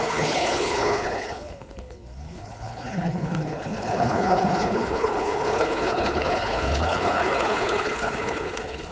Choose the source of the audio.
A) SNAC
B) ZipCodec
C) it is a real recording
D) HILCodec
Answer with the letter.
D